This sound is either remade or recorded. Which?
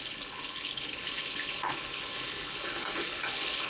remade